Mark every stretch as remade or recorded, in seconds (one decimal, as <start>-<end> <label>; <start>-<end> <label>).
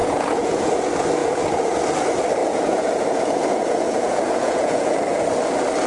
0.0-0.7 remade; 0.7-1.2 recorded; 1.2-1.8 remade; 1.8-2.4 recorded; 2.4-5.3 remade; 5.3-5.9 recorded